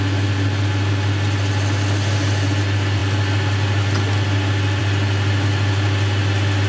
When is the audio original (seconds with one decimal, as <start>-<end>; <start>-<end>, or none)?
0.0-6.7